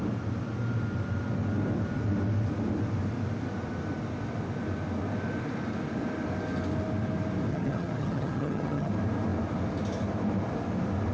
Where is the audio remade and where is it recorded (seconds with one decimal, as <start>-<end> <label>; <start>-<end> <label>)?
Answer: 0.0-7.5 recorded; 7.5-8.9 remade; 8.9-11.1 recorded